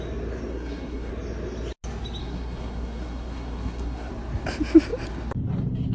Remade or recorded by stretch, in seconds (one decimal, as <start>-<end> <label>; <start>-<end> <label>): 0.0-0.5 recorded; 0.5-1.1 remade; 1.1-2.2 recorded; 2.2-4.1 remade; 4.1-5.9 recorded